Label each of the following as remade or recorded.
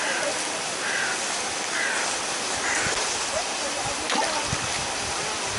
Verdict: recorded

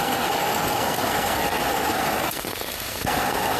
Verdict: remade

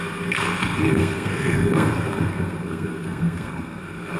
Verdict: remade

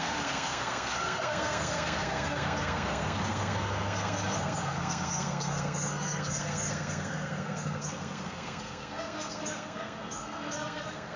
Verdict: remade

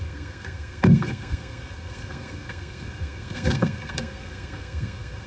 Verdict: remade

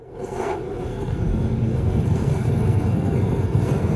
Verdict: remade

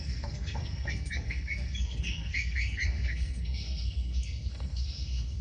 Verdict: remade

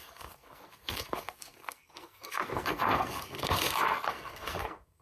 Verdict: remade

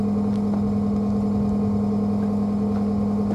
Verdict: recorded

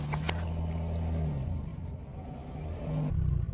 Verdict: recorded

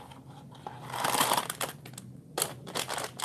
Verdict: recorded